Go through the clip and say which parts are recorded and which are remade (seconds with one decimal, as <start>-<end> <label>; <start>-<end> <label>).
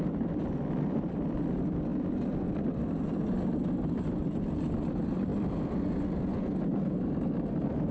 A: 0.0-7.9 recorded